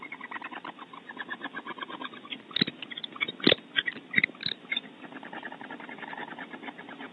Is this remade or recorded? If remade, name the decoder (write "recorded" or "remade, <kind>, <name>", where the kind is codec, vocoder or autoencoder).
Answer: recorded